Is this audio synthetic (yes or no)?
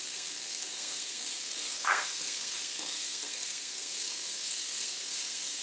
yes